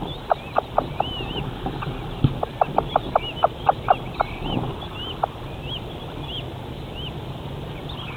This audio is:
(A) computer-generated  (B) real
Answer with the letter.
B